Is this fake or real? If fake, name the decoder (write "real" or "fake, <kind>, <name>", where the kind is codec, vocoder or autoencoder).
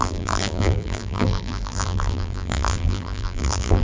fake, vocoder, BigVGAN v2